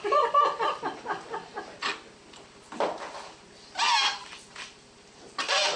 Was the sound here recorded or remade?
recorded